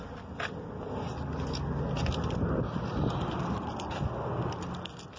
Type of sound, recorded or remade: recorded